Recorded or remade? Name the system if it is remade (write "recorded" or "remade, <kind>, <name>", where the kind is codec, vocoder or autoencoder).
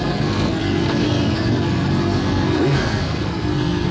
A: remade, codec, SNAC